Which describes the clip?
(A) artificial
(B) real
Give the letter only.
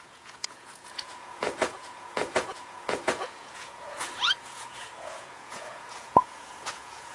A